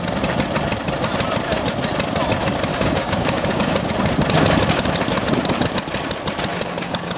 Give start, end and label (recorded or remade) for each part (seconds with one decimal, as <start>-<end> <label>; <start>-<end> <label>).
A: 0.0-2.7 recorded; 2.7-3.9 remade; 3.9-6.5 recorded; 6.5-7.2 remade